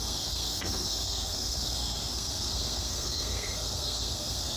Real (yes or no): no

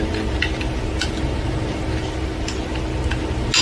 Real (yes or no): yes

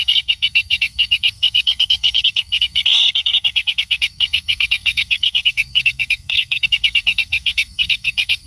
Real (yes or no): no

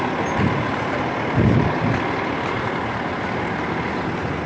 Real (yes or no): yes